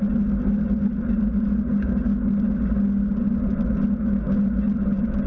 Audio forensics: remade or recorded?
recorded